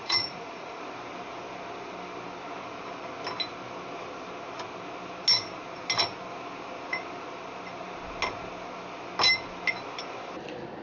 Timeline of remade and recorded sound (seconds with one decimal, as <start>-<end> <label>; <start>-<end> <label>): 0.0-0.8 remade; 0.8-10.8 recorded

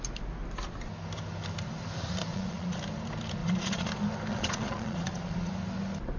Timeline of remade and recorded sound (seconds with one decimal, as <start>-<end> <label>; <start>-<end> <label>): 0.0-2.3 recorded; 2.3-2.8 remade; 2.8-3.4 recorded; 3.4-3.9 remade; 3.9-4.3 recorded; 4.3-5.5 remade; 5.5-6.2 recorded

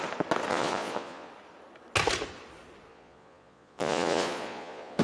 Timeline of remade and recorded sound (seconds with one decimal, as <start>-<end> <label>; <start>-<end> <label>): 0.0-0.5 recorded; 0.5-1.3 remade; 1.3-2.9 recorded; 2.9-5.0 remade

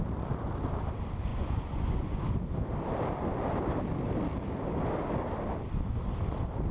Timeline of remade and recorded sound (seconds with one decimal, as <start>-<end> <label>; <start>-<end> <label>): 0.0-1.3 recorded; 1.3-2.2 remade; 2.2-6.7 recorded